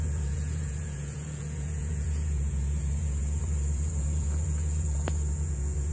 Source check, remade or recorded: remade